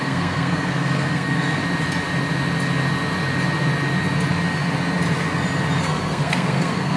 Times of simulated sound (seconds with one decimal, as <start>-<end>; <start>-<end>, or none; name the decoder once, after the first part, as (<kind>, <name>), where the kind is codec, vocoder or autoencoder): 0.0-1.6 (codec, SNAC); 5.8-7.0